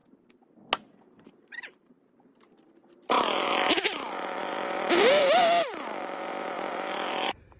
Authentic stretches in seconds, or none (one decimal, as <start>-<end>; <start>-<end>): 0.0-1.2